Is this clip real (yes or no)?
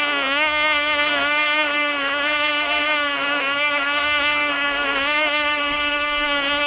no